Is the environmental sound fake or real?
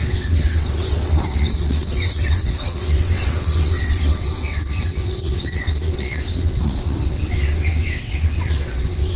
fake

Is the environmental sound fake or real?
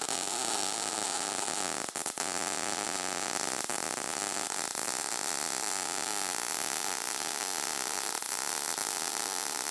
real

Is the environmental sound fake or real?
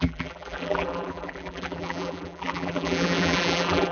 fake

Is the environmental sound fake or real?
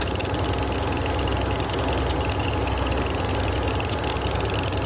real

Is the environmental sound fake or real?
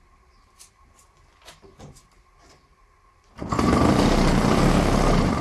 real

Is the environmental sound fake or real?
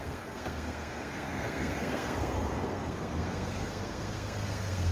fake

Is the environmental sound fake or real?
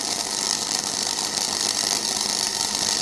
real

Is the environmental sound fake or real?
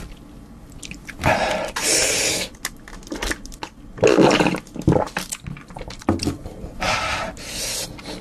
real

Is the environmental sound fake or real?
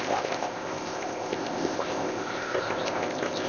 fake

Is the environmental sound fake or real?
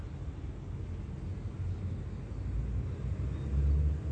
real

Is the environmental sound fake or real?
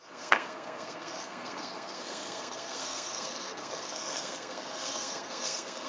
fake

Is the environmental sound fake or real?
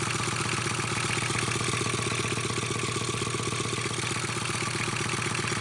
real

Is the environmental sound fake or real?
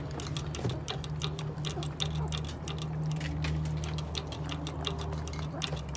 real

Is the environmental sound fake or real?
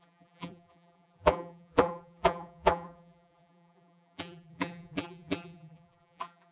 fake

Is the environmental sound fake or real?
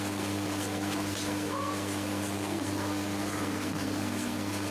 fake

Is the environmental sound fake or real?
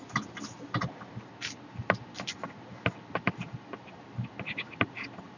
real